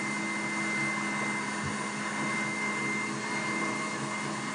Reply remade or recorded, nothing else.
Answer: recorded